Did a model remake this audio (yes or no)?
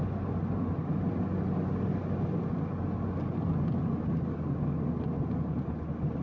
no